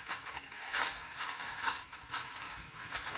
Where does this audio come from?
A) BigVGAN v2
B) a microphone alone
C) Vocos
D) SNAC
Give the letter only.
D